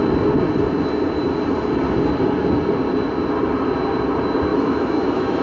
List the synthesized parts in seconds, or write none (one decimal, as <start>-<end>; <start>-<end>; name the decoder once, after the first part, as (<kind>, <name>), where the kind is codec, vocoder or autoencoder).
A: 4.5-5.4 (autoencoder, DAC-VAE)